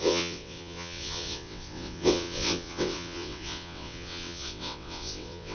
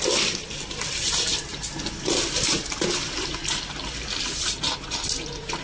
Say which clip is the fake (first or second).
first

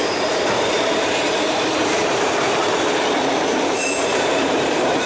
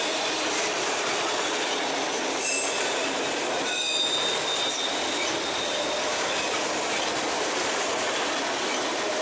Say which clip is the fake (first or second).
first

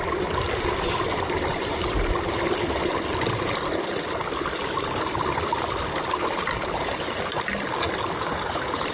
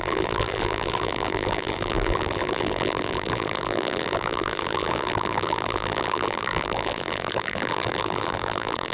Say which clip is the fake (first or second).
second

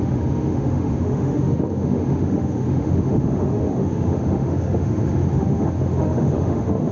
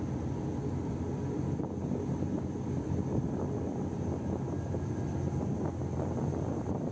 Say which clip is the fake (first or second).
first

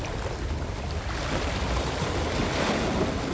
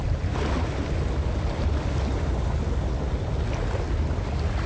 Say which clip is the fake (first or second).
first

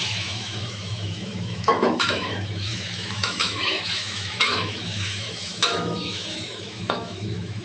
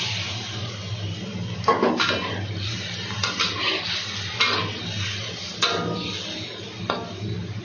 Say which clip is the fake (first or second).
first